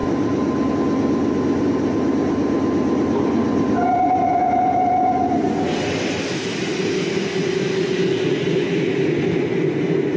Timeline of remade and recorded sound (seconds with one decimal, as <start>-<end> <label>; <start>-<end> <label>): 0.0-10.2 recorded